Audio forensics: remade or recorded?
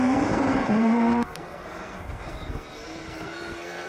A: remade